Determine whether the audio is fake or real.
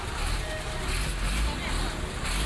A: real